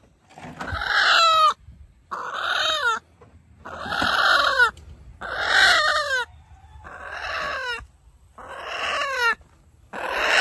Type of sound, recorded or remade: recorded